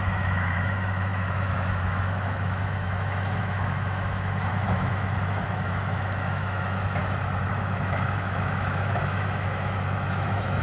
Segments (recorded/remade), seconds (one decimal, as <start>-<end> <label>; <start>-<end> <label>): 0.0-7.0 remade; 7.0-7.5 recorded; 7.5-10.6 remade